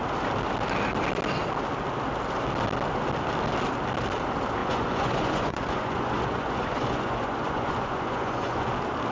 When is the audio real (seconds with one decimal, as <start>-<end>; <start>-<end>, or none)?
0.0-4.6; 8.7-9.1